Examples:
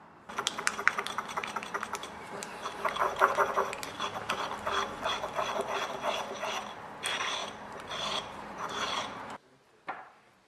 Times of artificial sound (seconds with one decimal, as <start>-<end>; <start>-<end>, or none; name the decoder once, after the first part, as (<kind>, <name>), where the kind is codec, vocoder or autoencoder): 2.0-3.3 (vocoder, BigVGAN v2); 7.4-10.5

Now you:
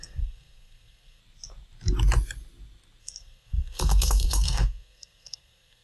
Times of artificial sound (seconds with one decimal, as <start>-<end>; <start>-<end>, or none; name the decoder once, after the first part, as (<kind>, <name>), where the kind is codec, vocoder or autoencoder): 0.0-1.2 (codec, SNAC); 3.0-5.8

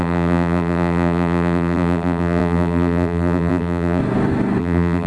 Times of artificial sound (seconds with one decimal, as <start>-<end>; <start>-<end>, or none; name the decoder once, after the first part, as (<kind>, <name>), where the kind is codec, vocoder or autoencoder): 0.0-4.0 (vocoder, BigVGAN v2); 4.6-5.1